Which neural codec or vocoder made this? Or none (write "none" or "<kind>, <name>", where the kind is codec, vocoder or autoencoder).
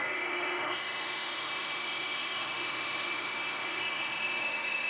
autoencoder, DAC-VAE